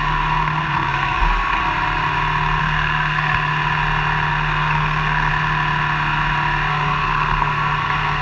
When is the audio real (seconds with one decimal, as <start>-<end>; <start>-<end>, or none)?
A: 1.6-2.6; 3.5-4.3; 5.3-6.7